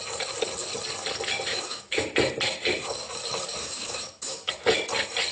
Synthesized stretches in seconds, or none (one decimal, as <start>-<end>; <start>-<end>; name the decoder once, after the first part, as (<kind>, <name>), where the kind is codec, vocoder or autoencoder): 1.5-2.0 (autoencoder, DAC-VAE); 3.6-4.5